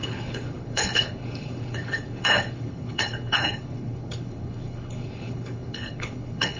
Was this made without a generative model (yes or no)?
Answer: no